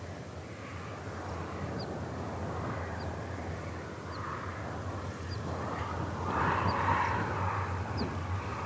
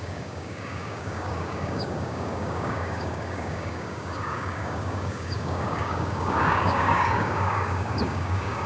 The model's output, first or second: second